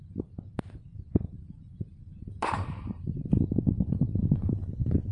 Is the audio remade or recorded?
remade